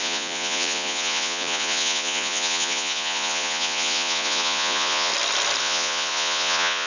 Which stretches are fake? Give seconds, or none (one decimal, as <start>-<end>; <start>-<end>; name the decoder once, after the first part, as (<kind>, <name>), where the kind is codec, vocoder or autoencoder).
0.0-5.1 (vocoder, Vocos); 5.6-6.9